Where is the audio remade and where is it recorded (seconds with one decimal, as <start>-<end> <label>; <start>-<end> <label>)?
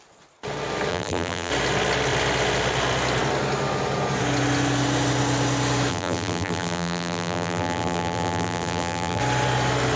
0.0-0.9 recorded; 0.9-1.5 remade; 1.5-5.9 recorded; 5.9-9.2 remade; 9.2-10.0 recorded